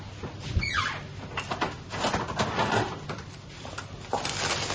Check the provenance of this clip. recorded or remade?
recorded